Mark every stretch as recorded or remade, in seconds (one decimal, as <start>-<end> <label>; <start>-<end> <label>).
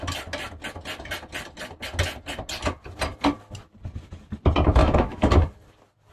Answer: 0.0-4.8 recorded; 4.8-5.3 remade; 5.3-6.1 recorded